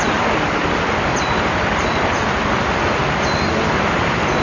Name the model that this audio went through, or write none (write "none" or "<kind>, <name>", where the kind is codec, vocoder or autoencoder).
none